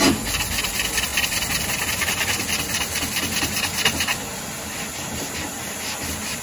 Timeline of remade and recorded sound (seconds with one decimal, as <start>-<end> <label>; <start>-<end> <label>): 0.0-1.1 recorded; 1.1-4.9 remade; 4.9-6.4 recorded